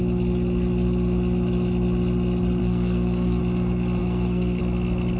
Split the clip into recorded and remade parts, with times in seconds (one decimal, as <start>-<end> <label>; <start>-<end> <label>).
0.0-2.6 recorded; 2.6-3.4 remade; 3.4-4.0 recorded; 4.0-4.6 remade; 4.6-5.2 recorded